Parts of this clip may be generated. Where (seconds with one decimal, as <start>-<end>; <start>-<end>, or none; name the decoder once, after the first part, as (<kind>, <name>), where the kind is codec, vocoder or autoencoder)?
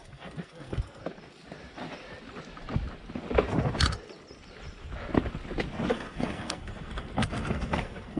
0.0-1.0 (codec, SNAC); 5.9-8.2